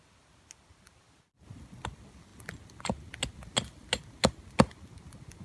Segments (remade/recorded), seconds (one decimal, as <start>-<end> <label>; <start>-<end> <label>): 0.0-5.4 recorded